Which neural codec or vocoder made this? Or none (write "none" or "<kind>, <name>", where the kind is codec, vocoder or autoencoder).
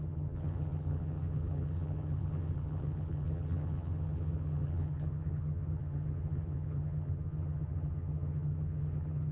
vocoder, HiFi-GAN